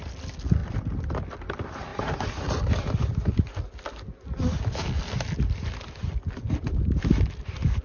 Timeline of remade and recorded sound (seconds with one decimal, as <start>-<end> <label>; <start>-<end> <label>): 0.0-7.8 recorded